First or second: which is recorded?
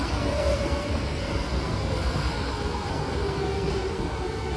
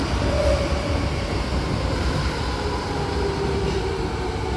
second